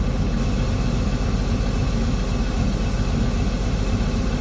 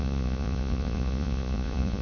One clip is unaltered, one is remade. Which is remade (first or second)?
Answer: second